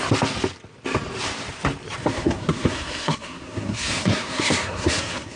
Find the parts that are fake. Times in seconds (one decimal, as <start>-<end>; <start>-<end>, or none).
2.0-5.4